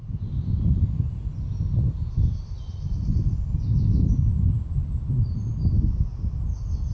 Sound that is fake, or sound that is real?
real